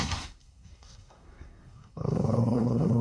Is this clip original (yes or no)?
no